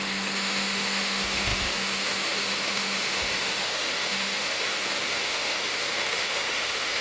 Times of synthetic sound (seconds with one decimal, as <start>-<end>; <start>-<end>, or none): 0.0-7.0